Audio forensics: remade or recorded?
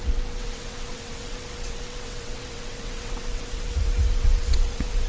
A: remade